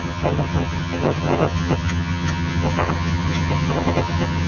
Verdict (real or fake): fake